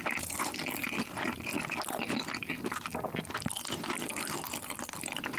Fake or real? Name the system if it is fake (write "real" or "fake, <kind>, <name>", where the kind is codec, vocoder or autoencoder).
real